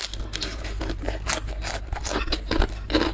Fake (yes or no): no